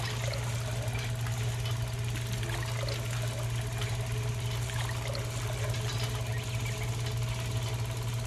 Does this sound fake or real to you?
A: real